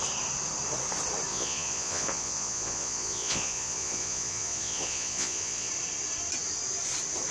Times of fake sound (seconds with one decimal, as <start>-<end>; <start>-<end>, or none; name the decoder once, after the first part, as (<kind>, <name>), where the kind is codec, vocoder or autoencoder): 1.3-5.7 (vocoder, Vocos)